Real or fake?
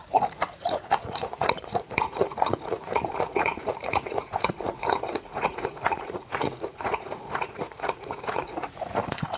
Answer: fake